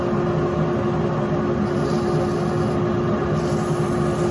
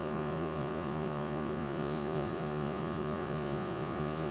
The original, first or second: first